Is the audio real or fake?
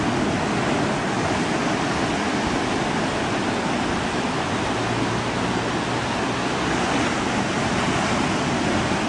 real